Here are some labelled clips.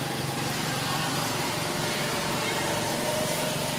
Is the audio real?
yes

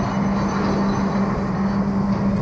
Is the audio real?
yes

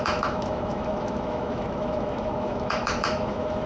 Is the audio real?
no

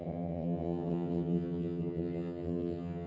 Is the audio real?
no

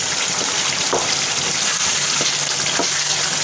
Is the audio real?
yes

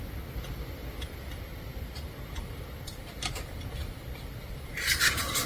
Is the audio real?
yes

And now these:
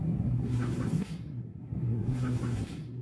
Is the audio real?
no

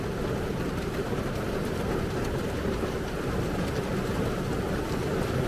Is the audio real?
yes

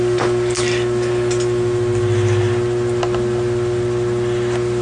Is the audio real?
yes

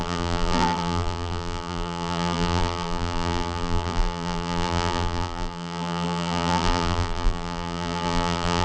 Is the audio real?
no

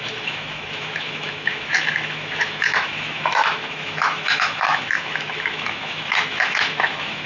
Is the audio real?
no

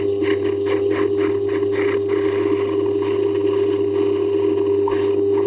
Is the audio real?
yes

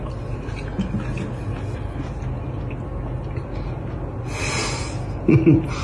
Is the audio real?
yes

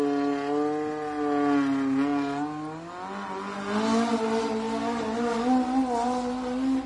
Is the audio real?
yes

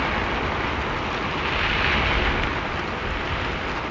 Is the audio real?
yes